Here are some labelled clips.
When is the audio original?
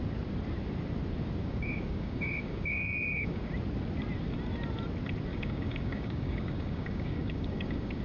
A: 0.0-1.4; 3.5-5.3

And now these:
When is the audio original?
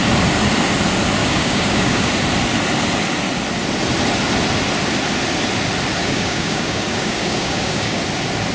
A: 0.0-1.2; 2.1-6.0; 8.0-8.5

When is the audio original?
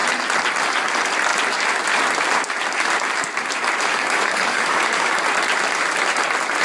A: 0.0-3.9; 5.2-6.6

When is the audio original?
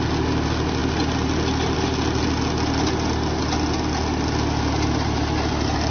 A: 0.0-5.9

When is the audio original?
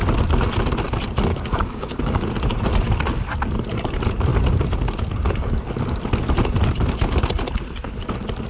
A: 0.0-1.3; 2.2-8.5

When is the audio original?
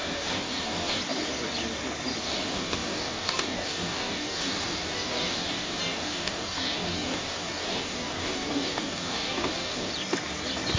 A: 1.0-2.2; 9.9-10.8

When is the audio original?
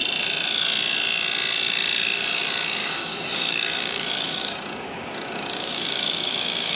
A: 0.0-2.8